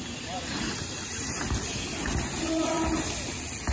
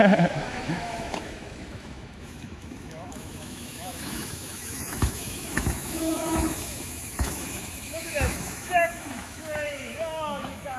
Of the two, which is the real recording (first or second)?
first